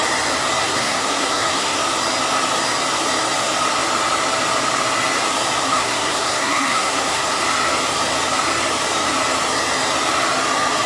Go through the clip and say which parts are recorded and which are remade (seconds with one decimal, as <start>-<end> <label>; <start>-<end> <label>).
0.0-0.6 recorded; 0.6-1.8 remade; 1.8-5.6 recorded; 5.6-7.4 remade; 7.4-10.9 recorded